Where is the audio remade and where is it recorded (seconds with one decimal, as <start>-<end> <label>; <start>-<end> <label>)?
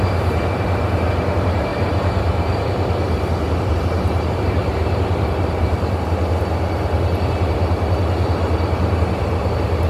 0.0-6.1 remade; 6.1-9.4 recorded; 9.4-9.9 remade